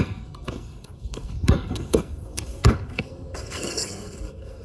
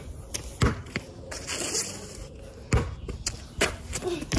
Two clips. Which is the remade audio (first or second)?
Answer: first